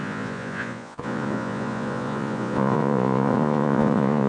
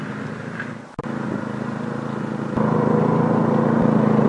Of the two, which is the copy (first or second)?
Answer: first